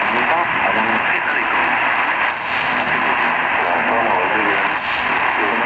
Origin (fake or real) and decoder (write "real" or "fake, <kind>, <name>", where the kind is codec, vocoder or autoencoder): real